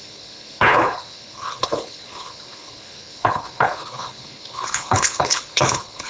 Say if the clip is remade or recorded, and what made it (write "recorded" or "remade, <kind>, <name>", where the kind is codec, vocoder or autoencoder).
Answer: remade, codec, HILCodec